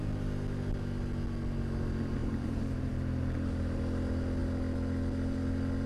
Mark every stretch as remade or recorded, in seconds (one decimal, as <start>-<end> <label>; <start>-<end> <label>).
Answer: 0.0-2.2 recorded; 2.2-2.9 remade; 2.9-5.9 recorded